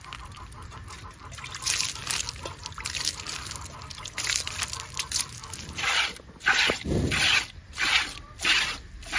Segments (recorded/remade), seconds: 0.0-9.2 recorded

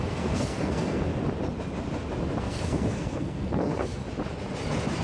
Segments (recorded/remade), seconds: 0.0-1.1 remade; 1.1-2.4 recorded; 2.4-4.0 remade; 4.0-5.0 recorded

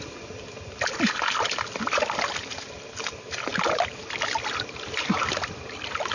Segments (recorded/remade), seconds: 0.0-6.1 recorded

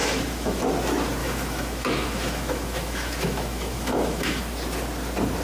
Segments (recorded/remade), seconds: 0.0-0.7 remade; 0.7-1.2 recorded; 1.2-4.4 remade; 4.4-5.4 recorded

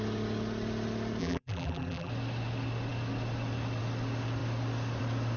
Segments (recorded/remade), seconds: 0.0-1.2 recorded; 1.2-2.1 remade; 2.1-5.4 recorded

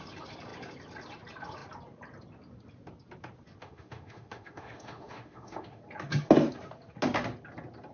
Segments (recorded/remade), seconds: 0.0-3.6 recorded; 3.6-5.8 remade; 5.8-7.9 recorded